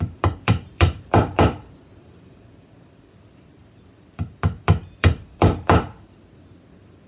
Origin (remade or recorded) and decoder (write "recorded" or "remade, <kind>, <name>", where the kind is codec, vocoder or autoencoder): remade, vocoder, BigVGAN v2